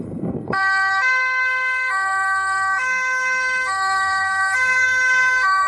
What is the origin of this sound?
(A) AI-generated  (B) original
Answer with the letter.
A